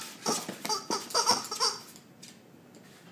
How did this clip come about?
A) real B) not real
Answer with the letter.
A